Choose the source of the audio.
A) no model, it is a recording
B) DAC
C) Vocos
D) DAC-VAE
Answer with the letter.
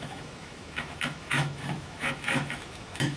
D